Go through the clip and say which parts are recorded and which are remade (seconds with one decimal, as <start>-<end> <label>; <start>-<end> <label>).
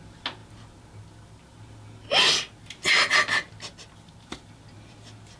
0.0-5.4 recorded